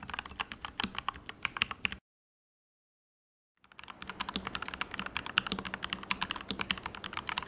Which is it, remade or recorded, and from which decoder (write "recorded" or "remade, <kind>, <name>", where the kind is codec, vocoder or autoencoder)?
recorded